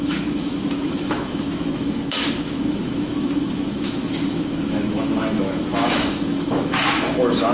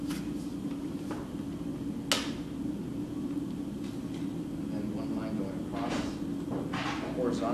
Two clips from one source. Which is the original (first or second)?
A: second